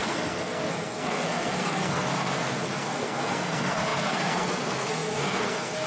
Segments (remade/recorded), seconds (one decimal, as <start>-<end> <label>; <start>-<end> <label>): 0.0-5.9 remade